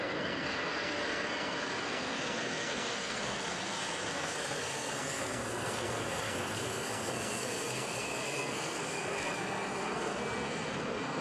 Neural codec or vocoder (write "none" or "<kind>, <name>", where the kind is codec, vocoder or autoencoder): codec, SNAC